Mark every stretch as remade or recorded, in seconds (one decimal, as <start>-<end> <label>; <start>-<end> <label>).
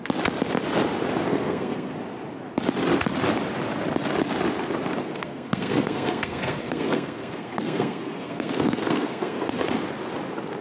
0.0-1.3 recorded; 1.3-1.9 remade; 1.9-5.0 recorded; 5.0-9.6 remade; 9.6-10.6 recorded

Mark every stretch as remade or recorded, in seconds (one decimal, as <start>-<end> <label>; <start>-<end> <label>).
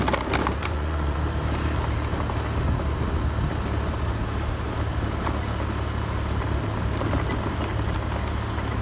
0.0-0.6 recorded; 0.6-1.2 remade; 1.2-8.8 recorded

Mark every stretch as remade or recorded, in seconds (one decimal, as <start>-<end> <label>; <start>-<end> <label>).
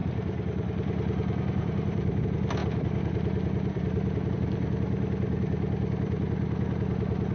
0.0-2.2 remade; 2.2-7.3 recorded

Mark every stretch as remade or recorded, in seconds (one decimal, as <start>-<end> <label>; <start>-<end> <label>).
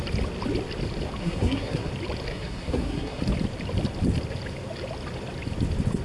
0.0-1.2 recorded; 1.2-1.9 remade; 1.9-2.3 recorded; 2.3-3.2 remade; 3.2-6.0 recorded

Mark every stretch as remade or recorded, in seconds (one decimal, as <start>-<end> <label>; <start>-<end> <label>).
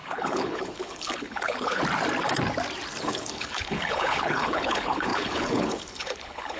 0.0-1.8 remade; 1.8-3.0 recorded; 3.0-6.6 remade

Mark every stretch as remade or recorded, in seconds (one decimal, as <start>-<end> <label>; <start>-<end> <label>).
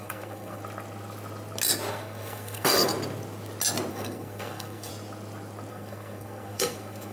0.0-0.6 remade; 0.6-1.9 recorded; 1.9-2.9 remade; 2.9-3.9 recorded; 3.9-4.9 remade; 4.9-5.7 recorded; 5.7-7.1 remade